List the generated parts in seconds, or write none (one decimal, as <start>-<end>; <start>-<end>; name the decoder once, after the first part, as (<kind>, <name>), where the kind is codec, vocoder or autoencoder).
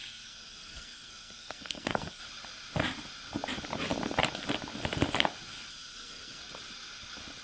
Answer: 0.0-2.2 (codec, SNAC); 5.7-6.4